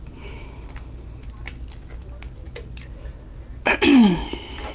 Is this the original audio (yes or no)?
yes